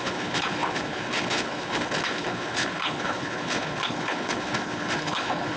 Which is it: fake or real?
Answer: fake